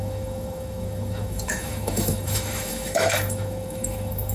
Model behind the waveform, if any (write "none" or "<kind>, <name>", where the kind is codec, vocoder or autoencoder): autoencoder, DAC-VAE